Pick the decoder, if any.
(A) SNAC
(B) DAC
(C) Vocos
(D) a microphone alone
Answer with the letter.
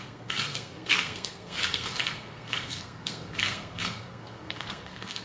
A